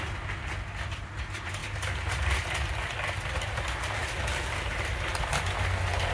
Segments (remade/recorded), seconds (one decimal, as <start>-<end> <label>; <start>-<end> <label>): 0.0-1.6 recorded; 1.6-5.2 remade; 5.2-6.1 recorded